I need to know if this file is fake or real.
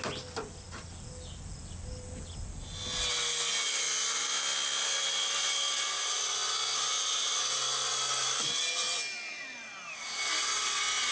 real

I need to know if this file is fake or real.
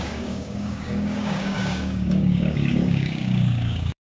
fake